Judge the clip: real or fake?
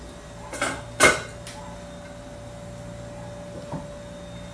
real